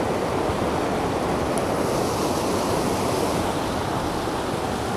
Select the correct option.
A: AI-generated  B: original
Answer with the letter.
B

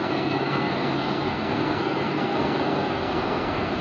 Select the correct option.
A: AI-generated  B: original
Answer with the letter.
A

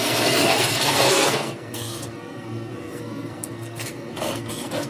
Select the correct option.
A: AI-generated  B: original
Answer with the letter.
A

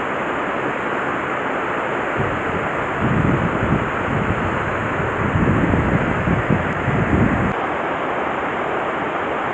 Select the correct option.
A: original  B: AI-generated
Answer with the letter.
A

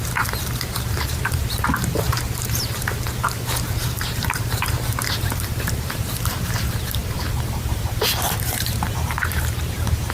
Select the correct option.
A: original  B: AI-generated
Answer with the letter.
B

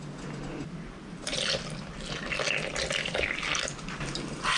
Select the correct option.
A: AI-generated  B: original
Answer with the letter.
B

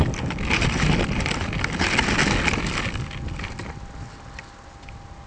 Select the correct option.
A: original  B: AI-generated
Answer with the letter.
A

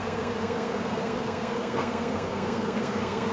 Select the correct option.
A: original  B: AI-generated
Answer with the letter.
B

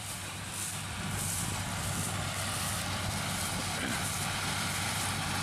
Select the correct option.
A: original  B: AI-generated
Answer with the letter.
A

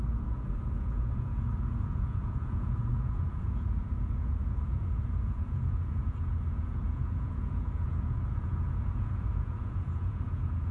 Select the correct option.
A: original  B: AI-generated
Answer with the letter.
B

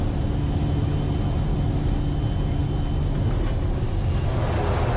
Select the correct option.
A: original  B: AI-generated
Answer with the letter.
A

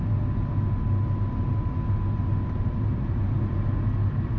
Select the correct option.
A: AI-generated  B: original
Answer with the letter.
B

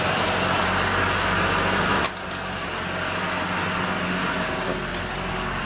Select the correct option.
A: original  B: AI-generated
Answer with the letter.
A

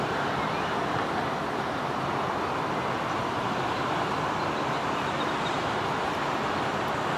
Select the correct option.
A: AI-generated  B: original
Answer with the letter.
B